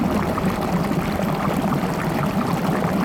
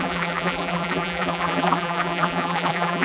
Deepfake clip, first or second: second